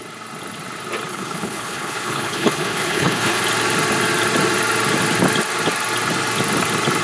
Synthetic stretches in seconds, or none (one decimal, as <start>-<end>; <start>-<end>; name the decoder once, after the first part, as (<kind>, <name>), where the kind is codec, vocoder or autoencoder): 1.1-3.4 (codec, HILCodec)